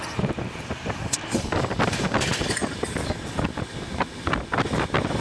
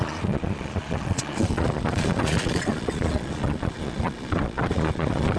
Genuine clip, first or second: first